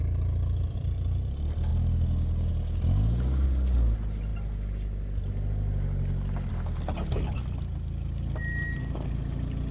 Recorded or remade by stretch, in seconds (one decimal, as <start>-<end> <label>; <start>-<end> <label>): 0.0-9.7 recorded